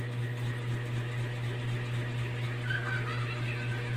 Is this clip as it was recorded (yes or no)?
yes